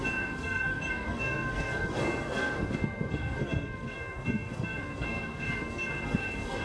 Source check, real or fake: fake